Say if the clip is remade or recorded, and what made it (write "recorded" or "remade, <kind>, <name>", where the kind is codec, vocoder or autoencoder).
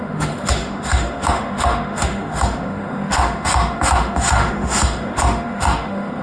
remade, autoencoder, DAC-VAE